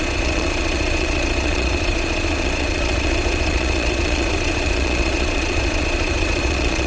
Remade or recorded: remade